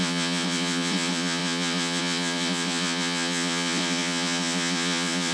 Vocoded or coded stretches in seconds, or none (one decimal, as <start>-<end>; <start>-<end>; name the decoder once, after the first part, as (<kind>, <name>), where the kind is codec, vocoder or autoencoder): 0.0-5.3 (vocoder, Vocos)